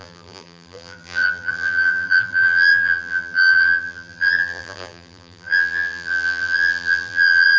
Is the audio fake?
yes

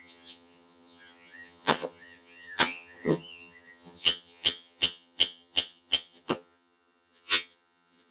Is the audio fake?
yes